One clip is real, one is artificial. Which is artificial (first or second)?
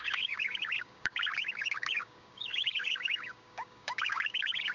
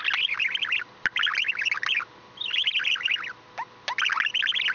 first